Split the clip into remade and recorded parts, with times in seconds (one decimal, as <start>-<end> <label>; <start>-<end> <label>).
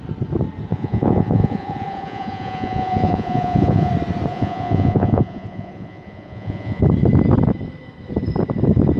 0.0-0.7 recorded; 0.7-3.9 remade; 3.9-4.3 recorded; 4.3-6.8 remade; 6.8-9.0 recorded